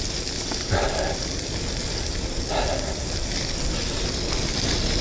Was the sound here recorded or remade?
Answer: recorded